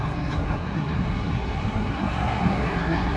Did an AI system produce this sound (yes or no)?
yes